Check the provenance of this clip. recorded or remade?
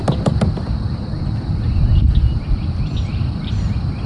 recorded